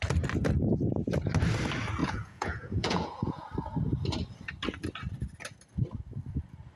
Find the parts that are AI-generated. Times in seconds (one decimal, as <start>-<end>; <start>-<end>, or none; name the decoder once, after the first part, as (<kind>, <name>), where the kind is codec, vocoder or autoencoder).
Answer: 2.0-3.5 (vocoder, Vocos)